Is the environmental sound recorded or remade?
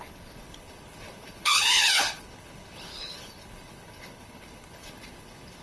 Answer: remade